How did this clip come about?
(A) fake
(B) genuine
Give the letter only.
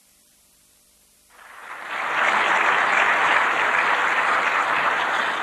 A